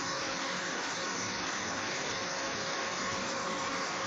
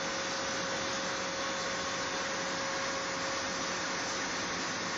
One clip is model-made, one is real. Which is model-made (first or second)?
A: first